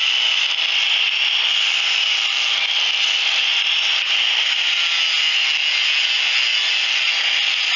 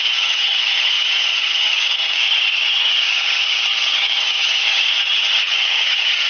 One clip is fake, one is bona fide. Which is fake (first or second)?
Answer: second